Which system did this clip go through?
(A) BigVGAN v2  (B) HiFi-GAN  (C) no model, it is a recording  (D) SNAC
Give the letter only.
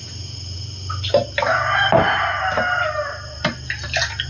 C